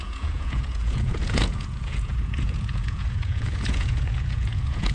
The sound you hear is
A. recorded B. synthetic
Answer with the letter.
B